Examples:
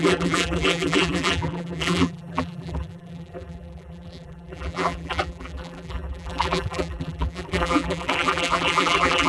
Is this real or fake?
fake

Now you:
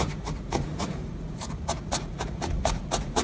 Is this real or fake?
fake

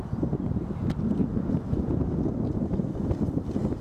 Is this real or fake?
real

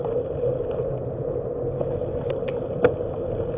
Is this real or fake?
real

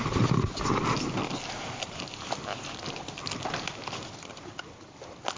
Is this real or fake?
real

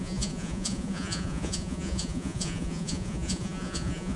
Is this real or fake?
fake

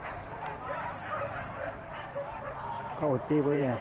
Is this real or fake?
fake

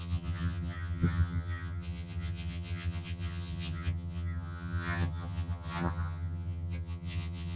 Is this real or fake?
fake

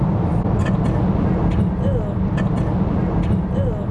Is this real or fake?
real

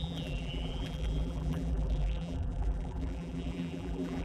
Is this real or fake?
fake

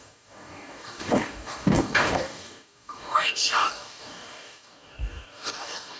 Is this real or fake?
fake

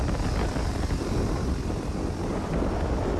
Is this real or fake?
real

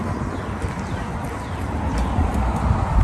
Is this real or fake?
real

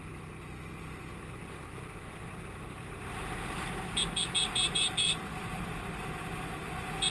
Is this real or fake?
real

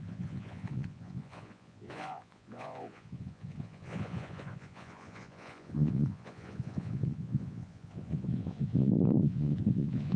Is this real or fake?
fake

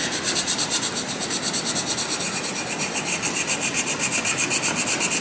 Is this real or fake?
real